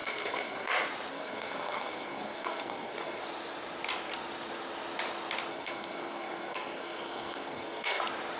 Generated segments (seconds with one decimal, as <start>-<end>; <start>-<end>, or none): 0.0-0.7; 1.1-3.2; 5.5-8.0